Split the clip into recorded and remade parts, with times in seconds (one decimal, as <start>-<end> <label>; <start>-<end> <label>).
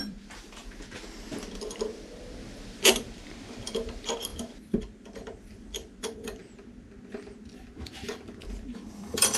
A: 0.0-0.6 remade; 0.6-2.6 recorded; 2.6-4.3 remade; 4.3-4.8 recorded; 4.8-6.4 remade; 6.4-8.4 recorded; 8.4-9.4 remade